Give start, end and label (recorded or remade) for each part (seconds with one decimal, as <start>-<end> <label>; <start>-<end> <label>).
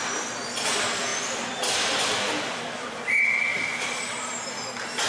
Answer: 0.0-1.1 recorded; 1.1-3.0 remade; 3.0-3.5 recorded; 3.5-4.2 remade; 4.2-5.1 recorded